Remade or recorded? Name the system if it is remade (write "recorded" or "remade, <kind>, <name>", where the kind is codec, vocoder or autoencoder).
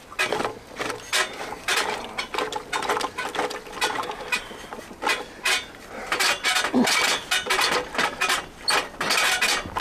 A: recorded